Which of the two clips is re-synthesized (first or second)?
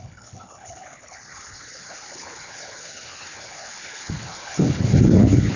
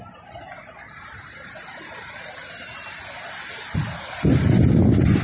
first